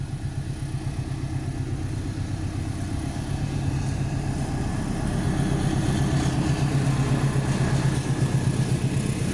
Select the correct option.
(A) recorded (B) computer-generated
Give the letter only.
A